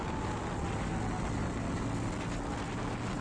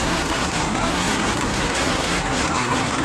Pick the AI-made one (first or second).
second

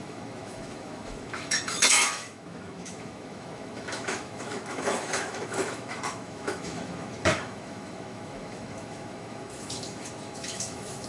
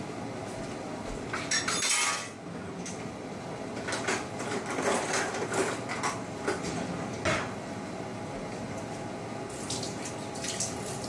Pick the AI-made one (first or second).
first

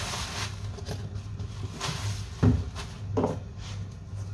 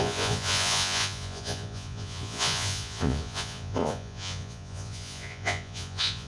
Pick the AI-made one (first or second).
second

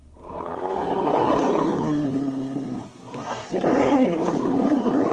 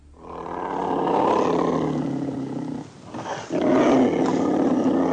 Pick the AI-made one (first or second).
first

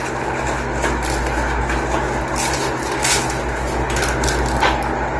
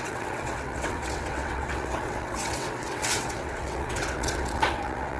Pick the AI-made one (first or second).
second